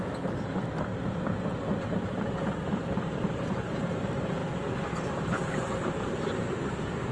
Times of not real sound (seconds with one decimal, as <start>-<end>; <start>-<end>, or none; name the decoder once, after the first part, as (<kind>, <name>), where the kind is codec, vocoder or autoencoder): 0.0-0.9 (vocoder, BigVGAN v2); 3.4-7.1